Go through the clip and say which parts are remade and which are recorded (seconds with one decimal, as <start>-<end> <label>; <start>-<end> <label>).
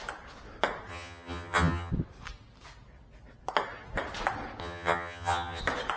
0.0-0.9 recorded; 0.9-1.9 remade; 1.9-4.6 recorded; 4.6-5.6 remade; 5.6-6.0 recorded